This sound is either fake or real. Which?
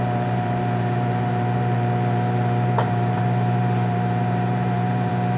fake